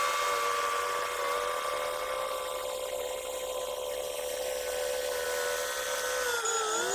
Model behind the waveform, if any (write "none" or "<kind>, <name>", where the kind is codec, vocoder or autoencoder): none